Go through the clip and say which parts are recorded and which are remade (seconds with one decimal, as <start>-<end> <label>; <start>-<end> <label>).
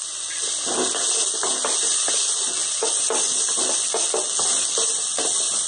0.0-5.7 recorded